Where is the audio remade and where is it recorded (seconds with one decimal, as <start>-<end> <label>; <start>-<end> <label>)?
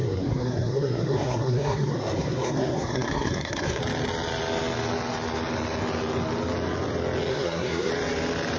0.0-3.8 remade; 3.8-7.3 recorded; 7.3-7.9 remade; 7.9-8.6 recorded